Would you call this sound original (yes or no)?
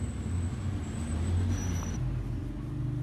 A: yes